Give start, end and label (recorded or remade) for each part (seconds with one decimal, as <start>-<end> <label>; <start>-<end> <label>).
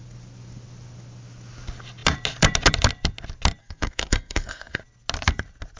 0.0-3.6 recorded; 3.6-4.8 remade; 4.8-5.8 recorded